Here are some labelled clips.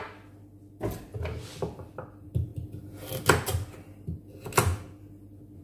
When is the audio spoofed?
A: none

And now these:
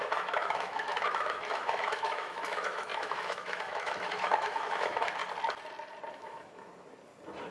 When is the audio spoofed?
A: 0.0-5.2; 6.1-6.7

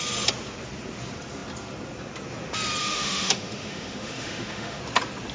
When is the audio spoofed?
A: 2.8-4.8